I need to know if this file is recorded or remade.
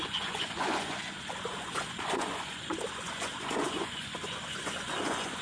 remade